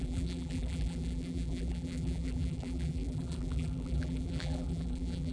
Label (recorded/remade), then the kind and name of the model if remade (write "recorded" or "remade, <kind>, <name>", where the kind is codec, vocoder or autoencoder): remade, vocoder, BigVGAN v2